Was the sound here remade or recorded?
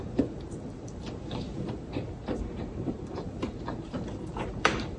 remade